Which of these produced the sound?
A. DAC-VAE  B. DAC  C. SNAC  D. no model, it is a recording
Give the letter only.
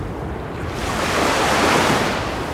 D